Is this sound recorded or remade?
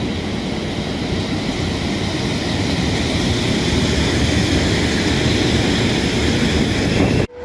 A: recorded